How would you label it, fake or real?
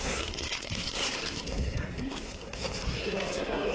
fake